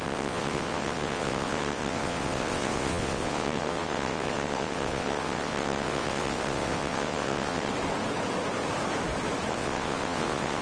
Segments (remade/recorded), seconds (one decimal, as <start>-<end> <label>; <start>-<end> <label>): 0.0-7.7 remade; 7.7-9.5 recorded; 9.5-10.6 remade